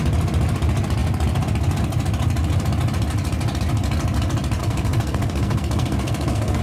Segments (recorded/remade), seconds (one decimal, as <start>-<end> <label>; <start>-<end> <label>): 0.0-4.6 recorded; 4.6-6.6 remade